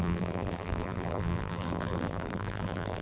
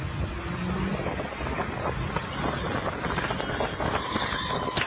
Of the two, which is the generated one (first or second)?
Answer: first